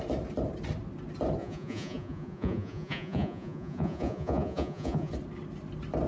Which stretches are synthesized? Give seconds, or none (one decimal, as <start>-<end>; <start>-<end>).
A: 1.4-5.1